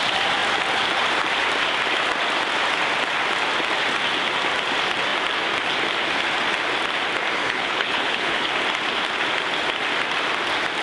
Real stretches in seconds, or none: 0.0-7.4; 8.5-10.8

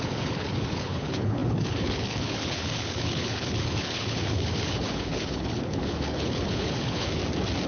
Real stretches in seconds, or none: 7.2-7.7

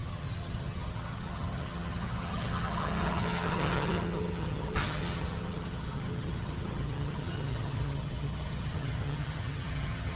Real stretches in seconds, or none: none

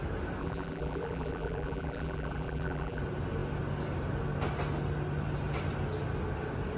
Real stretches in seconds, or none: 0.0-0.4; 3.0-6.8

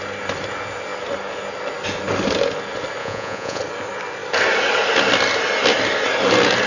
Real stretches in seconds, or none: 0.0-3.0; 3.6-6.7